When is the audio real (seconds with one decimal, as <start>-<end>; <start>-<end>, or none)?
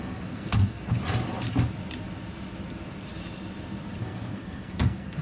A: 0.9-4.0